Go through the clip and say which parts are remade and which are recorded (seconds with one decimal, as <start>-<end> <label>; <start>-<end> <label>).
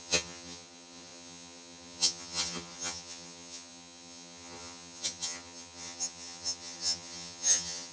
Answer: 0.0-7.9 remade